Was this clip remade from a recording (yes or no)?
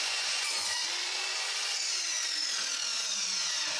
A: yes